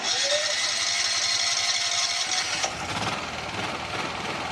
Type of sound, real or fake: real